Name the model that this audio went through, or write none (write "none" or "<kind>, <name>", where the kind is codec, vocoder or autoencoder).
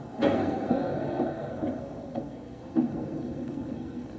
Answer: codec, SNAC